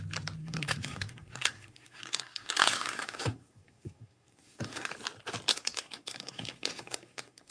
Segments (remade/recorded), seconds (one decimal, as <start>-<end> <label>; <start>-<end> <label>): 0.0-0.4 recorded; 0.4-4.9 remade; 4.9-5.5 recorded; 5.5-7.5 remade